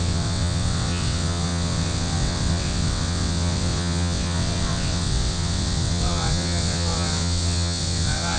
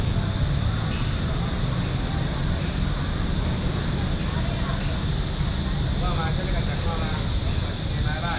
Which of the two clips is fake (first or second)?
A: first